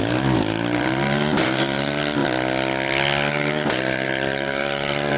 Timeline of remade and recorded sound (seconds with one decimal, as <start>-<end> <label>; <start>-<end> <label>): 0.0-2.2 remade; 2.2-3.3 recorded; 3.3-5.2 remade